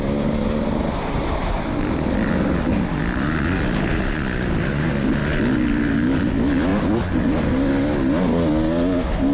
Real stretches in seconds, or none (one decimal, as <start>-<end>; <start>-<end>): 0.0-9.3